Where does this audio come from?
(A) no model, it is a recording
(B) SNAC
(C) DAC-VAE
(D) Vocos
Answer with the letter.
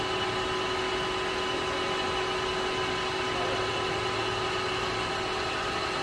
A